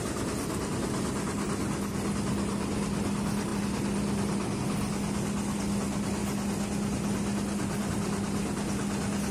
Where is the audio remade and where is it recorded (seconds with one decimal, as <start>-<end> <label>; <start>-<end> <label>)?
0.0-9.3 recorded